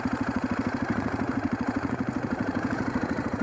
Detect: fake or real fake